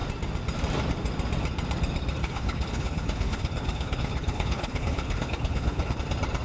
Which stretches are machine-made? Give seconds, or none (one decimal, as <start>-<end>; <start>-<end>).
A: 2.2-6.0